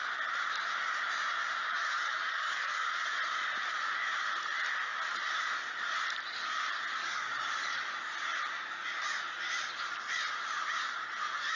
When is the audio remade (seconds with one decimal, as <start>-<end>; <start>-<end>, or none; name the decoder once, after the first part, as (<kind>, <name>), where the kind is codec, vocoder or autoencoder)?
1.7-2.9 (codec, DAC); 7.0-7.8